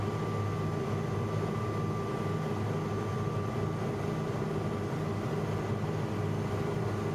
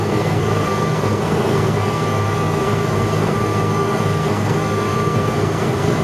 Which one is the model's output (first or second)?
second